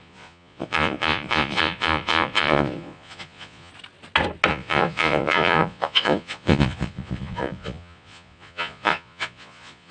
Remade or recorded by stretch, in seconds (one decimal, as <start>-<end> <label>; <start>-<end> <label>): 0.0-3.7 remade; 3.7-4.5 recorded; 4.5-9.9 remade